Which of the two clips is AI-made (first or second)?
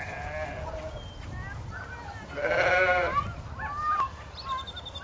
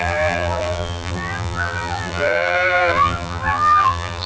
second